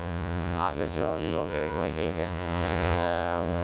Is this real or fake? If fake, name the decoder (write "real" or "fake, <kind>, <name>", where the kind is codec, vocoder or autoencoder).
fake, vocoder, Vocos